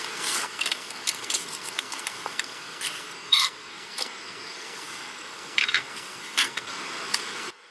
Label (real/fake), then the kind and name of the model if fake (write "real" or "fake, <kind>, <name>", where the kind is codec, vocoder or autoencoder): fake, codec, SNAC